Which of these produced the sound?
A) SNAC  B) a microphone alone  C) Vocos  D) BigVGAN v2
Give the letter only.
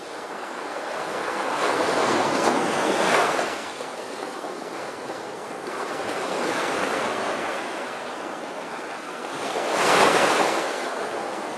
A